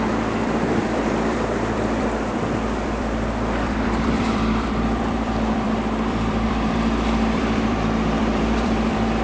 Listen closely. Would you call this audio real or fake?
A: fake